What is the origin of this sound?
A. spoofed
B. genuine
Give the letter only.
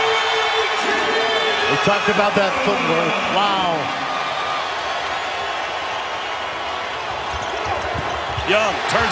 B